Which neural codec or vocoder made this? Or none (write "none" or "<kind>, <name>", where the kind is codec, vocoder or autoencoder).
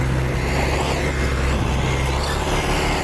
none